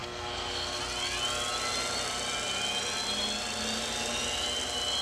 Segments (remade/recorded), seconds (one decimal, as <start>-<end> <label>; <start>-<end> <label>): 0.0-0.8 remade; 0.8-5.0 recorded